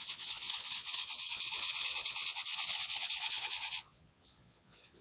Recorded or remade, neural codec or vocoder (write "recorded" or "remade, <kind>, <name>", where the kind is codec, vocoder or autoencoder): remade, vocoder, Vocos